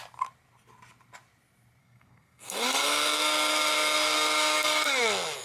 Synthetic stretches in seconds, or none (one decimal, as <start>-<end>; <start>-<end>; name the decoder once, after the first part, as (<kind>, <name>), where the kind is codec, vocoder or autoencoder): 1.8-5.0 (codec, SNAC)